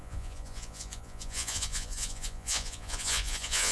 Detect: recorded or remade remade